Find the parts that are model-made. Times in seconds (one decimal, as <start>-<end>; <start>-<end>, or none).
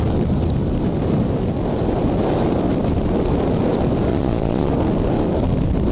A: 4.1-4.7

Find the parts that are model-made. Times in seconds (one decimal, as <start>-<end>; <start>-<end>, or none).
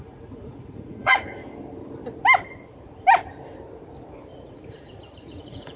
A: 0.0-1.4; 4.5-5.8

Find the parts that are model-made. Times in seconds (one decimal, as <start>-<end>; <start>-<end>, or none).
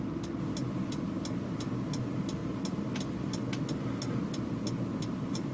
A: none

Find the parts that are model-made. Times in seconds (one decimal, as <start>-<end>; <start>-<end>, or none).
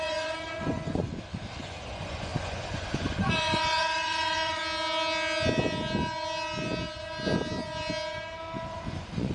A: 0.0-1.1; 1.6-4.6; 8.7-9.3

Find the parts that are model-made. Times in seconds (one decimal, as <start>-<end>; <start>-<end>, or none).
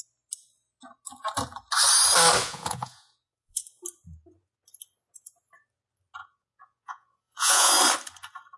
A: 2.4-3.6; 6.2-7.7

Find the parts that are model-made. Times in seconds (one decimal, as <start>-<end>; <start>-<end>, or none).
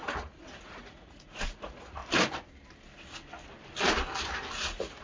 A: 0.0-2.0; 4.6-5.0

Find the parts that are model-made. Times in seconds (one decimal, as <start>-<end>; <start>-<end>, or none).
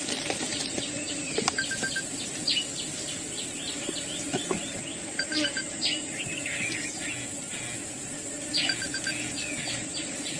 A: none